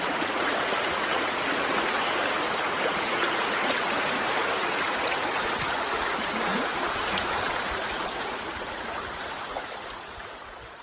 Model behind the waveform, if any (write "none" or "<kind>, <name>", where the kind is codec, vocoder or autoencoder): vocoder, Vocos